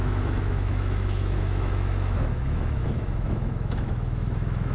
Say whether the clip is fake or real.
fake